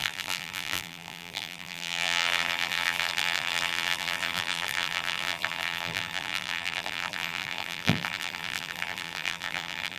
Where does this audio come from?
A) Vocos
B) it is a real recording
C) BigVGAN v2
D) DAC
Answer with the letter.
C